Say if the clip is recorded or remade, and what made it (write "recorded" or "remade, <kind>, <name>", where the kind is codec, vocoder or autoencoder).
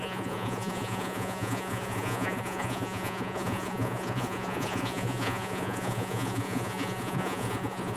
remade, vocoder, Vocos